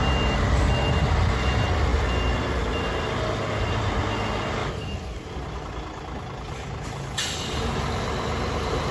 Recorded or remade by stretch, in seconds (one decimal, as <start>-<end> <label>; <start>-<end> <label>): 0.0-8.9 recorded